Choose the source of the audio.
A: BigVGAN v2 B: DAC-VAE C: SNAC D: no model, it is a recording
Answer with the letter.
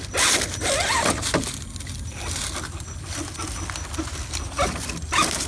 D